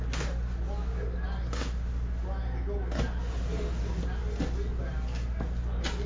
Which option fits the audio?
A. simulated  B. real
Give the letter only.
B